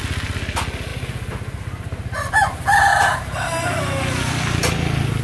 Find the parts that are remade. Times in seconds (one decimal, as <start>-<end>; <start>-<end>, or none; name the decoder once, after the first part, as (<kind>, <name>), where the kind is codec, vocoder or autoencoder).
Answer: none